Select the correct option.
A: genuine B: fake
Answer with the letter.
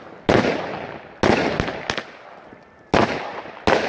A